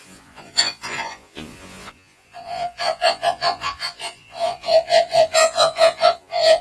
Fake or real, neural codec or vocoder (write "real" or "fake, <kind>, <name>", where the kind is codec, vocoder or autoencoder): fake, vocoder, Vocos